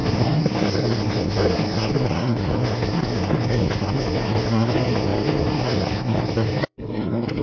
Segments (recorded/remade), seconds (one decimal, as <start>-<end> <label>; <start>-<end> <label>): 0.0-7.4 remade